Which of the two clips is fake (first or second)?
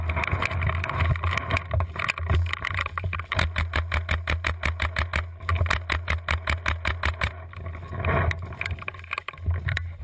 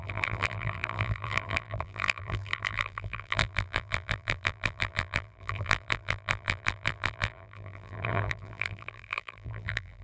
second